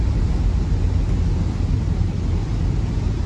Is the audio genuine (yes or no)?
yes